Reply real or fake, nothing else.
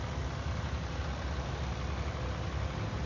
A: real